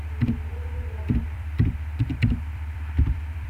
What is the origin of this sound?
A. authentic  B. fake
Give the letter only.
B